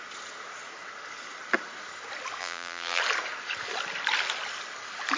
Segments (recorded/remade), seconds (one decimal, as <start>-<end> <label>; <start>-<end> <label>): 0.0-2.4 recorded; 2.4-3.0 remade; 3.0-5.2 recorded